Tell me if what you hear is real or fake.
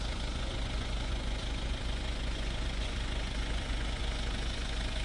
fake